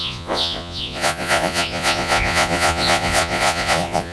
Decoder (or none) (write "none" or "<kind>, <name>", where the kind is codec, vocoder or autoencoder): vocoder, Vocos